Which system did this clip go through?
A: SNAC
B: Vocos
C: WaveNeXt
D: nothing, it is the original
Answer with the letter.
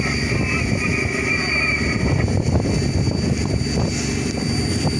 D